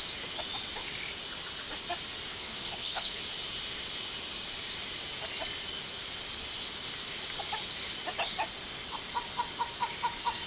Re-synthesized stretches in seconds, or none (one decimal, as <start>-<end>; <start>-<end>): 2.3-3.2